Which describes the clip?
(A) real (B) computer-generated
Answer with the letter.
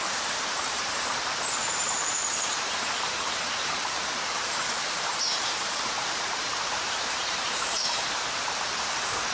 B